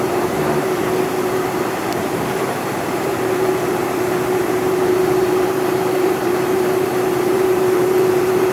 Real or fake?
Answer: fake